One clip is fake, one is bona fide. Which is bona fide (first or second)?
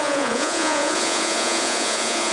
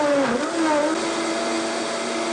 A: second